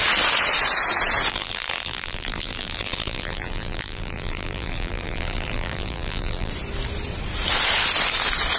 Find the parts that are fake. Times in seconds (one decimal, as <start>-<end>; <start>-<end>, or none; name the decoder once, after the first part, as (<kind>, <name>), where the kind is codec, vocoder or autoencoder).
1.3-6.5 (vocoder, BigVGAN v2)